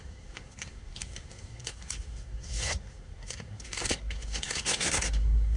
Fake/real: fake